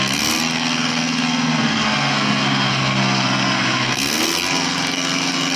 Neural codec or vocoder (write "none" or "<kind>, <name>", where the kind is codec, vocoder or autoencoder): codec, SNAC